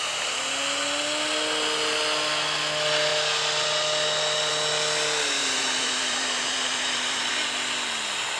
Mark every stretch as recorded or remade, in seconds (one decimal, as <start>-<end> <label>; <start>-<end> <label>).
0.0-5.4 recorded; 5.4-7.3 remade; 7.3-8.4 recorded